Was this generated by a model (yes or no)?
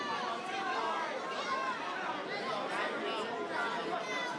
no